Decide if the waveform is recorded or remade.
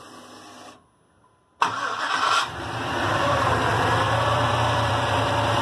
remade